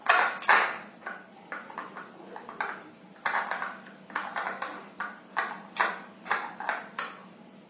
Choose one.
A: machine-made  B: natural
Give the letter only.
B